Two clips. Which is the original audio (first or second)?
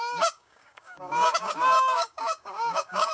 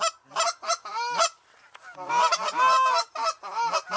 second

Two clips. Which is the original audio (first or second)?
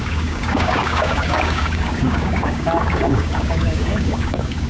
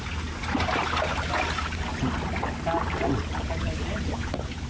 second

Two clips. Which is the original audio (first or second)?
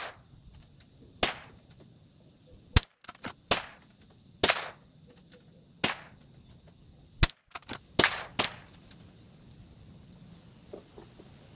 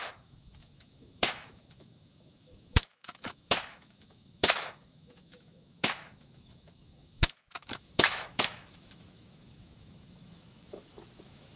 first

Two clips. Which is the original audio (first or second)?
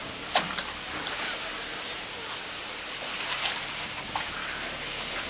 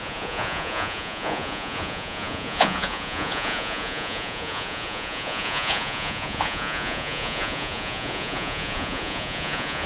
first